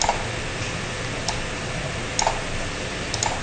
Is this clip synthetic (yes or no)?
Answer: no